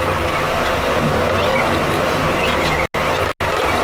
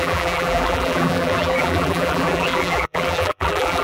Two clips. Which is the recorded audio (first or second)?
first